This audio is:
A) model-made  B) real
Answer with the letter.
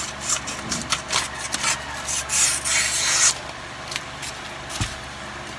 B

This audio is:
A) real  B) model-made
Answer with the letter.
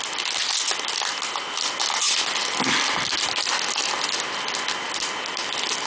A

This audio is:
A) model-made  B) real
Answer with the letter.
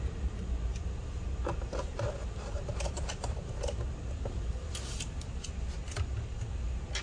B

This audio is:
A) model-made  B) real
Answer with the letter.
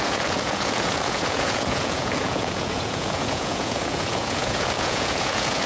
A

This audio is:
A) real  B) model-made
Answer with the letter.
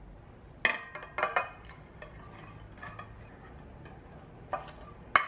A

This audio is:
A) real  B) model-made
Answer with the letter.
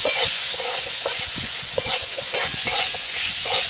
B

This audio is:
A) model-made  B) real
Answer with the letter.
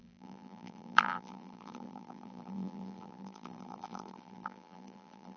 A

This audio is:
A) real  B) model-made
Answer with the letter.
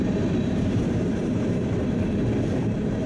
B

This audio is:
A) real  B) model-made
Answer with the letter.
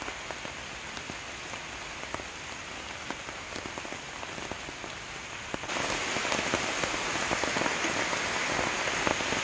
A